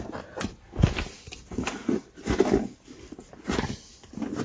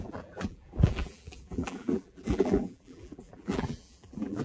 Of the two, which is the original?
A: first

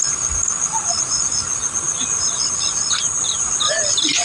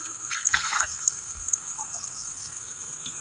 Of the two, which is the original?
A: first